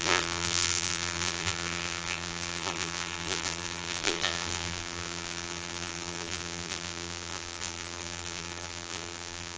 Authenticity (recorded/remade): remade